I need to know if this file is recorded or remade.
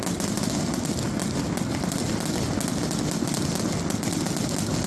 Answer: recorded